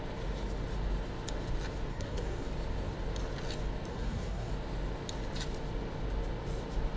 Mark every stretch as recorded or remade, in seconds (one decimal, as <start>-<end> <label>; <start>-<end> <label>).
0.0-1.9 recorded; 1.9-2.5 remade; 2.5-3.9 recorded; 3.9-4.5 remade; 4.5-7.0 recorded